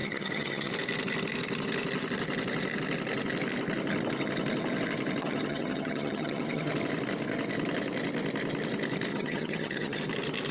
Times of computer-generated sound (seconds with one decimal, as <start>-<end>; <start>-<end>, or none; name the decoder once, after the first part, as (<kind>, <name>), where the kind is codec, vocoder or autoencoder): 0.0-0.7 (vocoder, HiFi-GAN); 5.2-6.7; 9.1-10.0